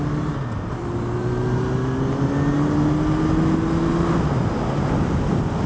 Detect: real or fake real